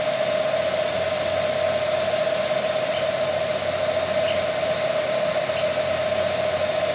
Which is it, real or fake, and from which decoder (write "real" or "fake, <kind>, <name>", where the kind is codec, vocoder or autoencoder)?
real